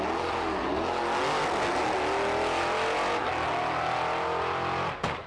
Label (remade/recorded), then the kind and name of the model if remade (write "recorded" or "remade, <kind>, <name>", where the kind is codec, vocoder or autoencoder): recorded